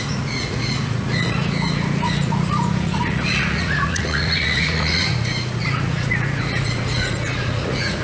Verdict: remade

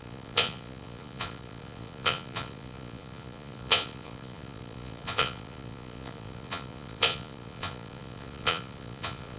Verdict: remade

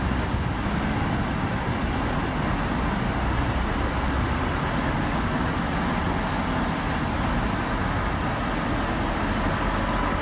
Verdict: recorded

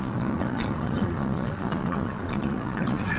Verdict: remade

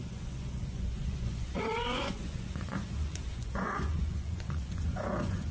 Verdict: remade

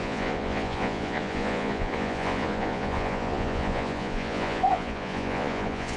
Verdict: remade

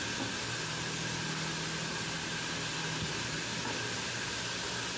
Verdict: recorded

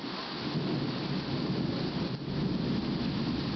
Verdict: recorded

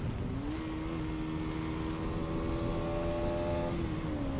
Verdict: recorded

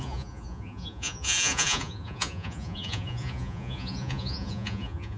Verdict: remade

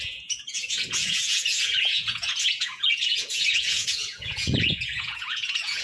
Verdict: remade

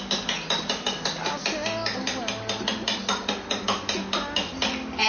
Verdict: recorded